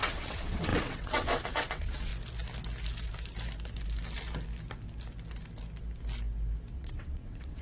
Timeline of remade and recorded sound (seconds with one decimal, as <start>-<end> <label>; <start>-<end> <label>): 0.0-2.1 remade; 2.1-6.7 recorded; 6.7-7.6 remade